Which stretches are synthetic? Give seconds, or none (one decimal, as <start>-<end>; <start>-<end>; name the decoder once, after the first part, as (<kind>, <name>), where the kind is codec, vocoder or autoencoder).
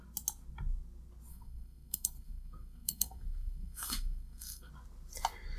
1.3-4.7 (codec, SNAC)